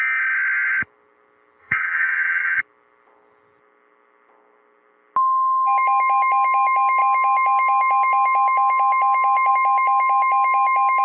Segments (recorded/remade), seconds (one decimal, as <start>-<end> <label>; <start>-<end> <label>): 0.0-1.6 recorded; 1.6-2.6 remade; 2.6-11.0 recorded